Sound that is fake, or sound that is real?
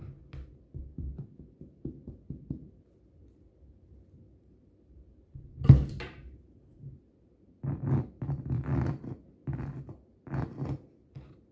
real